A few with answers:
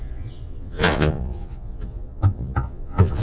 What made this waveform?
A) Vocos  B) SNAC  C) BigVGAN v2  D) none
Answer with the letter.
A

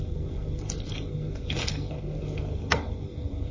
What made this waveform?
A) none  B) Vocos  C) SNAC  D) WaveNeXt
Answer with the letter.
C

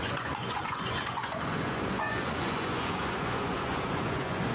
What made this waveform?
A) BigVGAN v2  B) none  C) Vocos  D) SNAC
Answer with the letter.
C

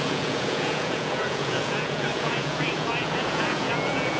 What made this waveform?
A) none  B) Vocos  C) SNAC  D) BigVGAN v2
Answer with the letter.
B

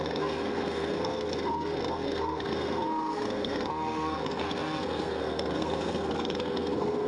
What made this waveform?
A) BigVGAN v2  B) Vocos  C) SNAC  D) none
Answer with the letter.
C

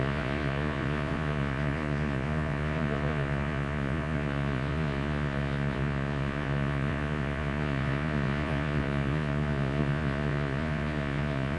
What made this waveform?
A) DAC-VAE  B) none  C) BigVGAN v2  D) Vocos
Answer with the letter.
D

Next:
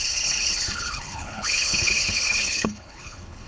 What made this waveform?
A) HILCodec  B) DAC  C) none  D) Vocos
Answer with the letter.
A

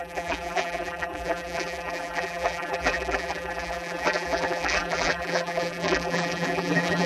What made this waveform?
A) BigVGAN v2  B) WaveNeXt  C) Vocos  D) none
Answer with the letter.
A